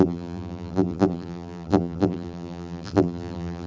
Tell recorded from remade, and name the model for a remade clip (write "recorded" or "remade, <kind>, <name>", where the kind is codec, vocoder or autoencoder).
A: remade, vocoder, BigVGAN v2